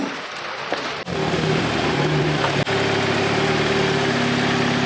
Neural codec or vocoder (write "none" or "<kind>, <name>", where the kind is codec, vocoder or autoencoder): none